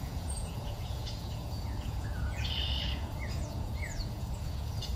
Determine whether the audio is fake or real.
fake